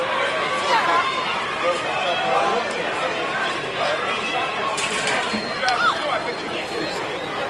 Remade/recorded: remade